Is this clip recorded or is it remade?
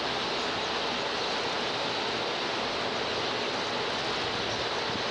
recorded